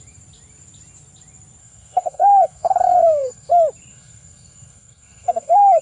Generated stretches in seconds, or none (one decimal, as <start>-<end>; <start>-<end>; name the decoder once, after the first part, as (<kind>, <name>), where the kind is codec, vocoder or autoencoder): 1.6-3.5 (codec, SNAC); 3.9-5.8